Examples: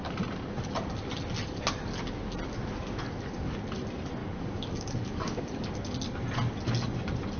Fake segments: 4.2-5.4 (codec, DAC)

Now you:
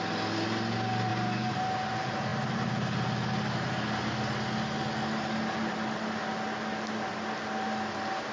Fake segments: none

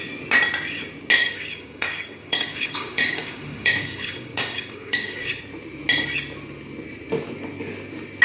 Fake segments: 1.2-5.4 (codec, DAC)

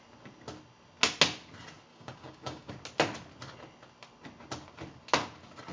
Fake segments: 1.9-2.7 (codec, DAC)

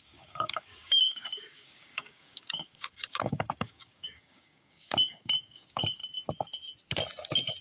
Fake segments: 0.0-6.0 (codec, DAC)

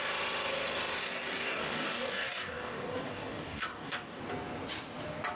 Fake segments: 1.0-4.2 (codec, DAC)

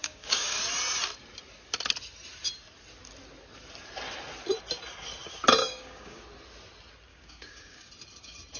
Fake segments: 0.0-0.6 (codec, DAC); 5.6-6.2; 7.1-7.9

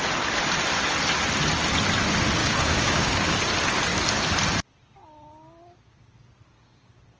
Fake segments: 2.4-3.4 (codec, DAC)